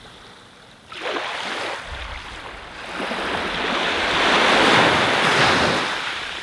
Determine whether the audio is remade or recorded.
recorded